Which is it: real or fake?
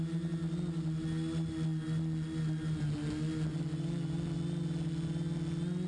real